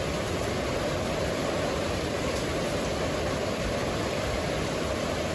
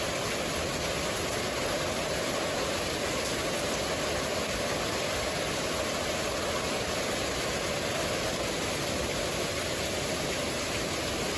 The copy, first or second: first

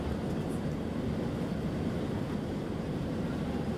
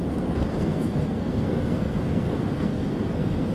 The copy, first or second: second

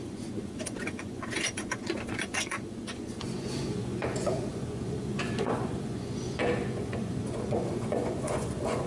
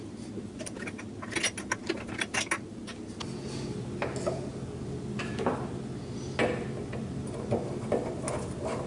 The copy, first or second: first